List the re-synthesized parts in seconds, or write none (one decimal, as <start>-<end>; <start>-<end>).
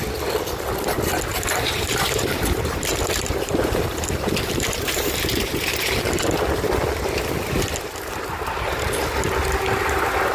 1.3-6.0